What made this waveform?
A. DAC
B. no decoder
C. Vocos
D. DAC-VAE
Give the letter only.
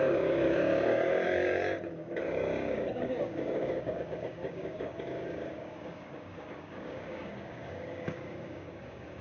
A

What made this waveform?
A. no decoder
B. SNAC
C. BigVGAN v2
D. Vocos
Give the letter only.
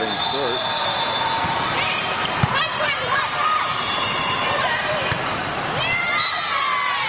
A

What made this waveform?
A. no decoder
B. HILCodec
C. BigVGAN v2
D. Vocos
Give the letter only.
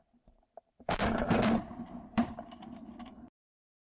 C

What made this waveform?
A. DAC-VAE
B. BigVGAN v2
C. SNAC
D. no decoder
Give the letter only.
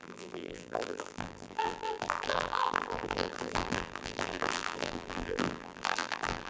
B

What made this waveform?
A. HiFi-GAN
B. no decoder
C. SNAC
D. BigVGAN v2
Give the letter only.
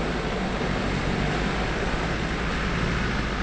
B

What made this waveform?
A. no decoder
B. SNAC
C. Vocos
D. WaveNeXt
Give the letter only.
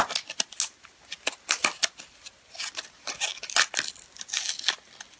A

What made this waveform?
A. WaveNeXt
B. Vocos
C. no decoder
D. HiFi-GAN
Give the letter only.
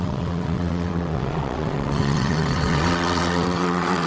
A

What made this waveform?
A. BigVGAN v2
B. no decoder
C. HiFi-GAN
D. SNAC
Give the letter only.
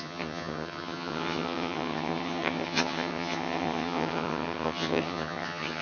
C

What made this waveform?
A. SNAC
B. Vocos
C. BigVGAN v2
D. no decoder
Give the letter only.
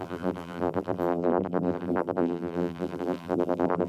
C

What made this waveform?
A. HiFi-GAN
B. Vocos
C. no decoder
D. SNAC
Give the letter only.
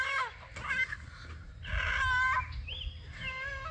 C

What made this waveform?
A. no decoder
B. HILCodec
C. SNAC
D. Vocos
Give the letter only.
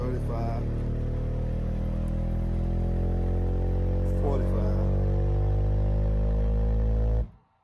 A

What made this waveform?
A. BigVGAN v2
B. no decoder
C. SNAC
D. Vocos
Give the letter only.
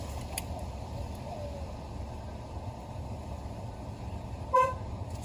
B